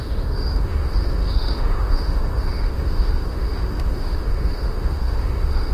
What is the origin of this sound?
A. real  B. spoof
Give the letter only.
B